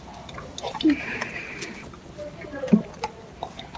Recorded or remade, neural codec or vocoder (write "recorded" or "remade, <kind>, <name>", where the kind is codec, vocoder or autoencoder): recorded